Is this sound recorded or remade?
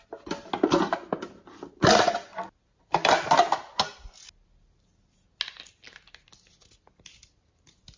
recorded